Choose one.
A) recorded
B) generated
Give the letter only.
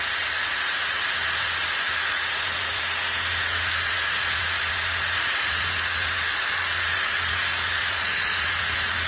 B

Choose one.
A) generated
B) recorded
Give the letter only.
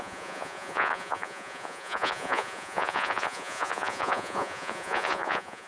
A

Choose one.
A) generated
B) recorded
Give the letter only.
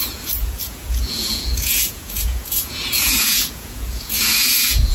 A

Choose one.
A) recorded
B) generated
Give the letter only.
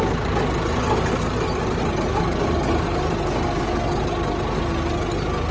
A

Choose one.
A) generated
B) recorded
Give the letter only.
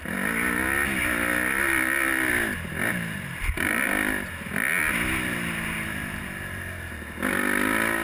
B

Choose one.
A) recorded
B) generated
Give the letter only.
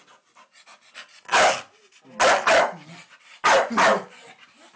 A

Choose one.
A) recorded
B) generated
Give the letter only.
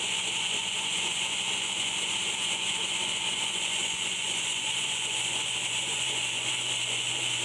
B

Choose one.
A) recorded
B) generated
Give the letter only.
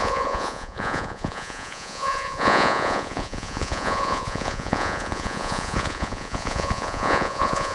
B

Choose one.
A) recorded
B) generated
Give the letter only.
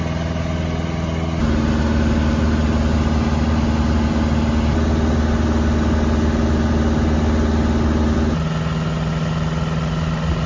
A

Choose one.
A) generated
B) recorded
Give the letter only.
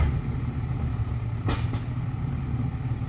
B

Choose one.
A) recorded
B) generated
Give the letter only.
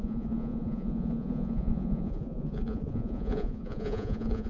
B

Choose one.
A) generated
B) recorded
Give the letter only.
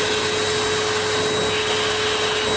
B